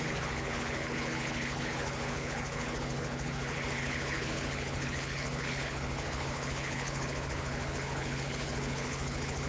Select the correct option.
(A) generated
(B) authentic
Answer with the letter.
A